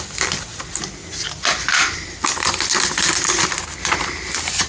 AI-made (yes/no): no